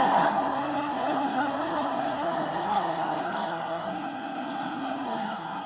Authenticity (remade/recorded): remade